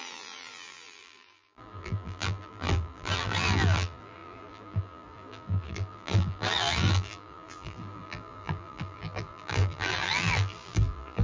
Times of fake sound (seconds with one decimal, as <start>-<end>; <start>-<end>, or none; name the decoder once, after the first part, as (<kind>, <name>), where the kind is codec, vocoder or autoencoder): 0.0-11.2 (vocoder, BigVGAN v2)